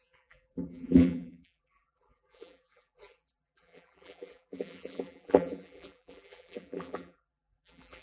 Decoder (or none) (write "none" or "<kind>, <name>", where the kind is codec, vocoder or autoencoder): vocoder, BigVGAN v2